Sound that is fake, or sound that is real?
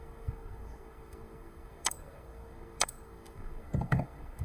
fake